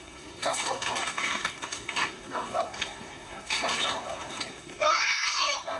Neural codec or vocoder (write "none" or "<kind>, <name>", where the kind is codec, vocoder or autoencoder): codec, SNAC